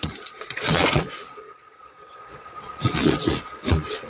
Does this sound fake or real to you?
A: fake